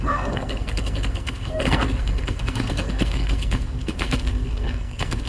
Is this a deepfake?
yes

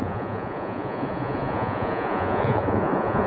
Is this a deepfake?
yes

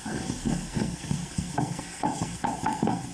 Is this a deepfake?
yes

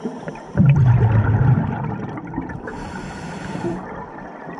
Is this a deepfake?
yes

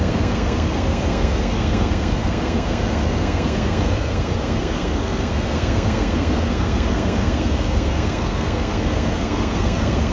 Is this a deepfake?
yes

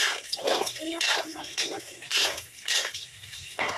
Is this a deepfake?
yes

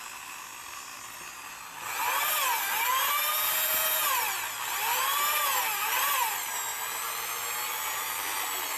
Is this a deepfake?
no